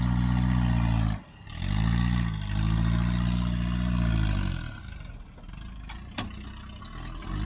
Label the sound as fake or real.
real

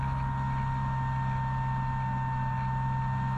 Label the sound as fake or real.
real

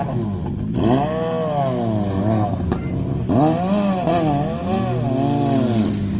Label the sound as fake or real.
real